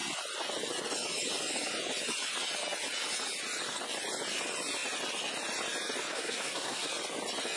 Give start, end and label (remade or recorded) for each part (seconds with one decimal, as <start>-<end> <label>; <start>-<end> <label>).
0.0-6.1 recorded; 6.1-6.9 remade; 6.9-7.6 recorded